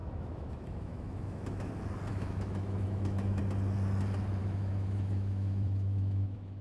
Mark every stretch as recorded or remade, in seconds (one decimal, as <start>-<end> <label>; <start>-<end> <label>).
0.0-1.7 remade; 1.7-2.1 recorded; 2.1-3.4 remade; 3.4-4.4 recorded; 4.4-6.6 remade